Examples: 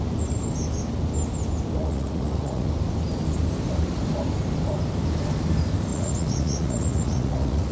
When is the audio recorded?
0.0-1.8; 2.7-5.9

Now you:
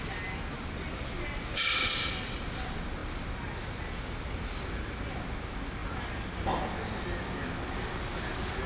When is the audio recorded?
0.0-8.7

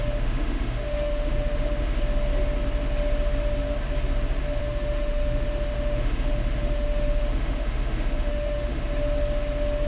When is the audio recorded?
2.0-4.6; 8.8-9.9

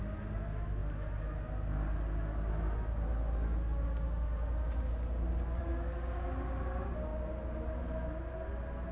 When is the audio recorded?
0.0-8.9

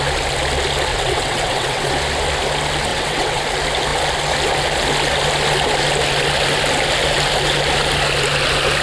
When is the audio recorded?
0.0-0.9; 1.9-2.9; 3.4-8.8

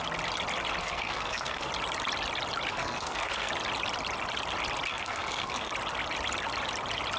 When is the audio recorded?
0.0-0.8; 1.7-2.7; 3.5-4.9; 5.7-7.2

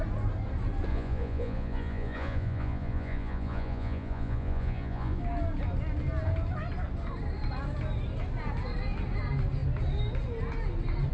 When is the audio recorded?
0.0-0.9; 5.2-11.1